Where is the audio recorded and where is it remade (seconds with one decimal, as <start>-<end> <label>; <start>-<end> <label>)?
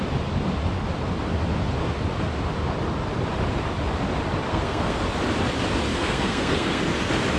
0.0-4.5 recorded; 4.5-5.0 remade; 5.0-5.9 recorded; 5.9-6.8 remade; 6.8-7.4 recorded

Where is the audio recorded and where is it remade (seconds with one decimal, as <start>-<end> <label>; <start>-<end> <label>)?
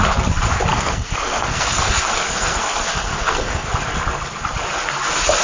0.0-0.7 recorded; 0.7-3.7 remade; 3.7-5.4 recorded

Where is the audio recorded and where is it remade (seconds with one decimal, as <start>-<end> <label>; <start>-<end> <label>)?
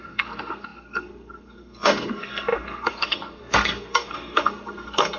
0.0-5.2 remade